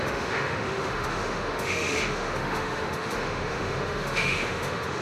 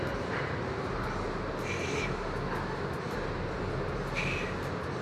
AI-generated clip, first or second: first